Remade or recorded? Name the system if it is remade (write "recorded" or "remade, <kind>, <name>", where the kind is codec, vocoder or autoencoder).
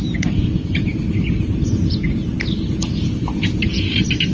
recorded